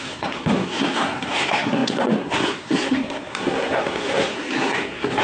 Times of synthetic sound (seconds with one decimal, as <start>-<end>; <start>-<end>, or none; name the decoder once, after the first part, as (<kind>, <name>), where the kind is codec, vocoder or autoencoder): 0.0-5.2 (codec, SNAC)